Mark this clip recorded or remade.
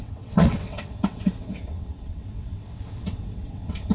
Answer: remade